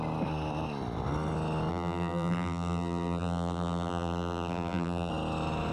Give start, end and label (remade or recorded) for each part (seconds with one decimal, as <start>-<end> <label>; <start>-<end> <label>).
0.0-1.7 recorded; 1.7-5.1 remade; 5.1-5.7 recorded